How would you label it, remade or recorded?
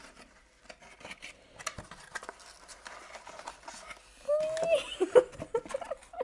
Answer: recorded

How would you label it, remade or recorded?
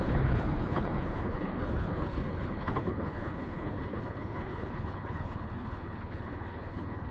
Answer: remade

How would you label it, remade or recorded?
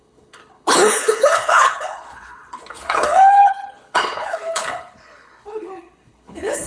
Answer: remade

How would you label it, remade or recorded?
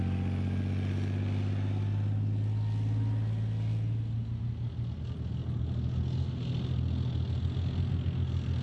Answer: recorded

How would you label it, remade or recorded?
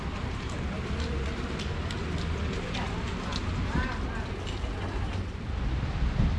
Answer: recorded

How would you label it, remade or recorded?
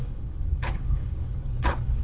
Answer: remade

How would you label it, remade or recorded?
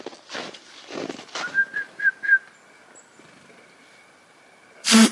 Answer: recorded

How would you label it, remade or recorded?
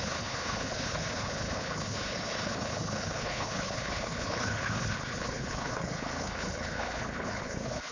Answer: remade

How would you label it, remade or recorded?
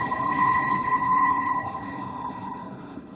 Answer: remade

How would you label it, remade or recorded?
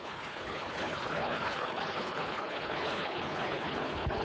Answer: remade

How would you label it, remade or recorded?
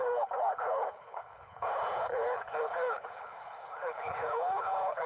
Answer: remade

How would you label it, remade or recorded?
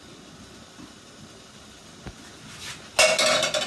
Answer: recorded